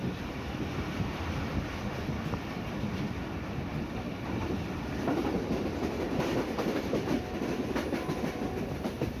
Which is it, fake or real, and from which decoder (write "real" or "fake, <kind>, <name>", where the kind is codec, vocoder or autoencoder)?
fake, vocoder, BigVGAN v2